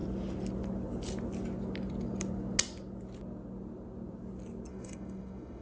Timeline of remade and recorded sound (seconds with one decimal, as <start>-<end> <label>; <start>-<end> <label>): 0.0-4.7 recorded; 4.7-5.6 remade